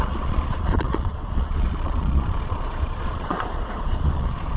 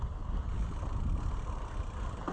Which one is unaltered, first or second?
second